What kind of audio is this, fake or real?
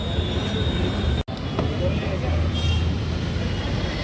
real